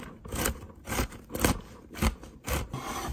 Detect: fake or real real